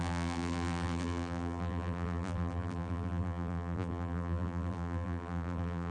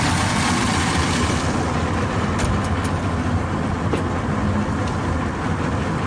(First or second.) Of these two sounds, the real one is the second